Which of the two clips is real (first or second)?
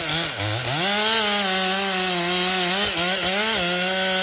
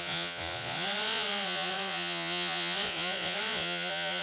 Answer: first